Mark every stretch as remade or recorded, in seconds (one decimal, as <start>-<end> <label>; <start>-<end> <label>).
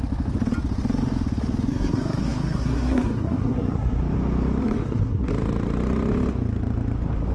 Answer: 0.0-1.7 recorded; 1.7-4.0 remade; 4.0-4.6 recorded; 4.6-5.3 remade; 5.3-7.3 recorded